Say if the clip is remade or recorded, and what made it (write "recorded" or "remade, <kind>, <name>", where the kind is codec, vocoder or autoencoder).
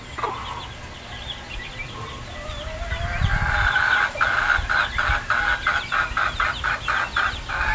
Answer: recorded